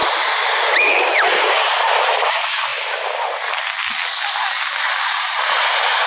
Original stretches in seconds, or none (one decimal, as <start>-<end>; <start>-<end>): 0.0-6.1

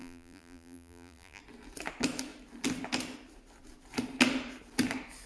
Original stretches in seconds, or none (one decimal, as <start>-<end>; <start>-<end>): 1.4-5.3

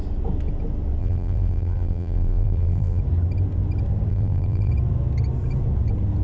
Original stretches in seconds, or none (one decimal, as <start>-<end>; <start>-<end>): 0.0-1.0; 3.0-4.1; 4.7-6.2